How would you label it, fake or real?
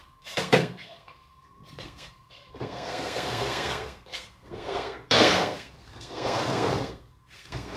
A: fake